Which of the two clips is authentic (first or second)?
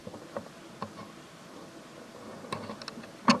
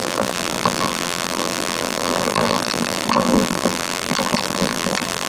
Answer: first